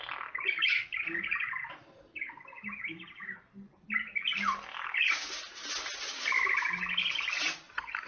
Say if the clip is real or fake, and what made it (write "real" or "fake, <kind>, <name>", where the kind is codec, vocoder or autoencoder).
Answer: real